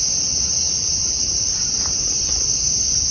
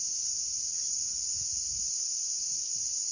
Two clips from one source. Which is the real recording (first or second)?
first